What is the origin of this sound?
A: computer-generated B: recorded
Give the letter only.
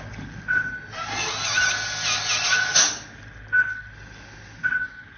B